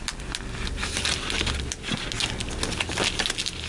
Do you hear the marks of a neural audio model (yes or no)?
no